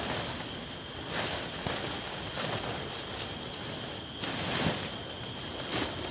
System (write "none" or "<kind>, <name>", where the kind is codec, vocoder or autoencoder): none